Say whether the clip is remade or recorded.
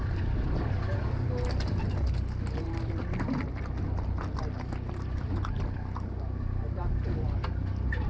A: recorded